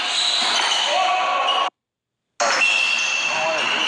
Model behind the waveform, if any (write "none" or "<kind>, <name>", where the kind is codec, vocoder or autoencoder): none